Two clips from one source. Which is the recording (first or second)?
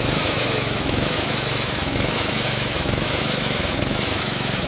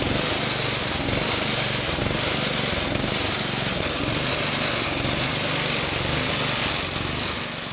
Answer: second